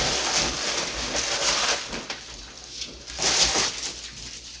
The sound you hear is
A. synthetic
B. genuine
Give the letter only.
B